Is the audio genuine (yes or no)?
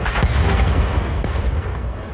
no